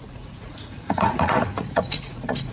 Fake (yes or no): yes